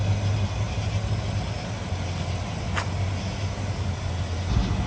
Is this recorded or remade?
recorded